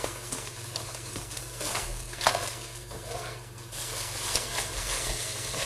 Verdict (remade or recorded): remade